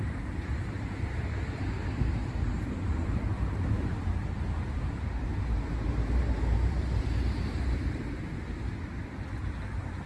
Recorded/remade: remade